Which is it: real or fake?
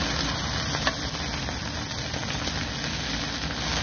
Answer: real